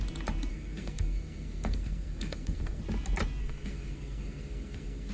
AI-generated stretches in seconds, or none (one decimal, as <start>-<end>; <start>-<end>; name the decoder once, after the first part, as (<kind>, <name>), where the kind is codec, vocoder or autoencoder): 0.5-2.8 (codec, SNAC); 3.4-5.1